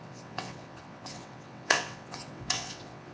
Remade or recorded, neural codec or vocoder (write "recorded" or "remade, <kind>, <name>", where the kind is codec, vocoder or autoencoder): remade, vocoder, WaveNeXt